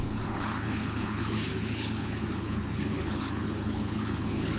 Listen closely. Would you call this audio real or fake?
fake